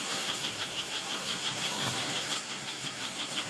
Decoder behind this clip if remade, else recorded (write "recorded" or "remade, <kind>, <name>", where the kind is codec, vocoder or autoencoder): remade, codec, SNAC